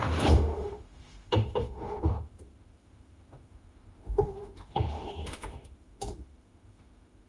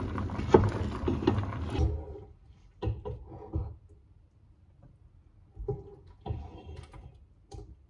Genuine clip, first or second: second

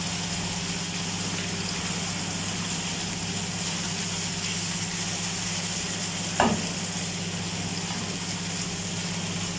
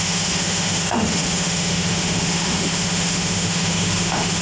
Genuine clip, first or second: first